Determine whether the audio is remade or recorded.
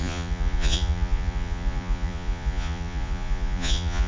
remade